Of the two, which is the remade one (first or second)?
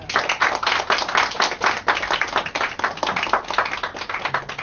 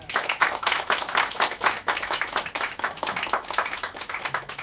second